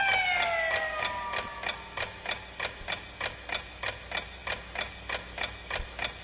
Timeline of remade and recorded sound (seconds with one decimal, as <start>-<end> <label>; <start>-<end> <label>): 0.0-6.2 recorded